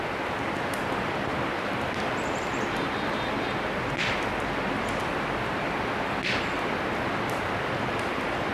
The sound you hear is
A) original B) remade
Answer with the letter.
A